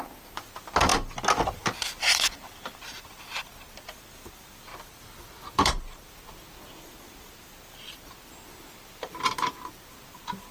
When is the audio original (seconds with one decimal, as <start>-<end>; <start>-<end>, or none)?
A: 0.0-4.7; 5.8-10.5